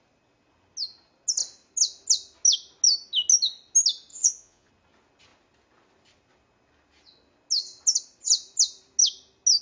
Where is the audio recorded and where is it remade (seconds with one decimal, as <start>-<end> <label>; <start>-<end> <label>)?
0.0-4.1 recorded; 4.1-4.7 remade; 4.7-9.6 recorded

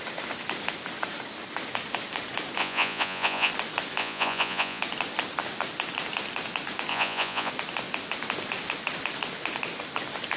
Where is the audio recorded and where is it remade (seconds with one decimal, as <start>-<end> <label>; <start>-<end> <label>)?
0.0-2.6 recorded; 2.6-3.5 remade; 3.5-4.0 recorded; 4.0-4.8 remade; 4.8-6.9 recorded; 6.9-7.5 remade; 7.5-10.4 recorded

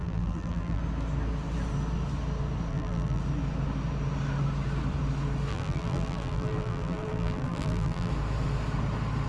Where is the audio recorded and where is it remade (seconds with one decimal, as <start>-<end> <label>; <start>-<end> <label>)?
0.0-0.8 remade; 0.8-2.7 recorded; 2.7-3.2 remade; 3.2-5.5 recorded; 5.5-8.1 remade; 8.1-9.3 recorded

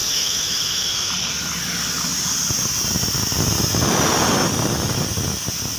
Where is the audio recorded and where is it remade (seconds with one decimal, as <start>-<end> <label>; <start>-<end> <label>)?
0.0-1.1 remade; 1.1-5.8 recorded

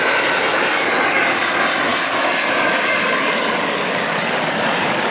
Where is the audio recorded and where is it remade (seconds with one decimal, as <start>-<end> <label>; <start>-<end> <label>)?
0.0-0.5 recorded; 0.5-1.5 remade; 1.5-1.9 recorded; 1.9-5.1 remade

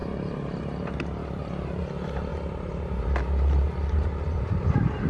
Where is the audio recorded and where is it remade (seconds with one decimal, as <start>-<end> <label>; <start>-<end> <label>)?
0.0-1.2 recorded; 1.2-1.8 remade; 1.8-5.1 recorded

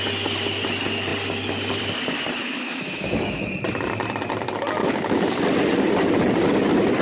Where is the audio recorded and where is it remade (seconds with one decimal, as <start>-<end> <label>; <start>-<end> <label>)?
0.0-2.4 recorded; 2.4-3.5 remade; 3.5-4.8 recorded; 4.8-5.4 remade; 5.4-7.0 recorded